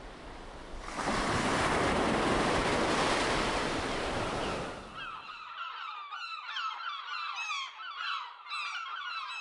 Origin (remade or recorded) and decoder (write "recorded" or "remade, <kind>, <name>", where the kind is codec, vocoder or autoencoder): recorded